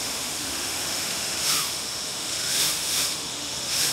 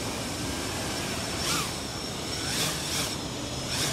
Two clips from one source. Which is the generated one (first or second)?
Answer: first